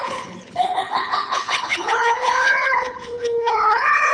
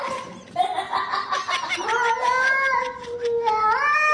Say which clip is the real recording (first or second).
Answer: second